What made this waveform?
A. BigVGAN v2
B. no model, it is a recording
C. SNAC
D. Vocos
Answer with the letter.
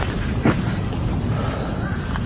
B